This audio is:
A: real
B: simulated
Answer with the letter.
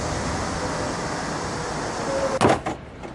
A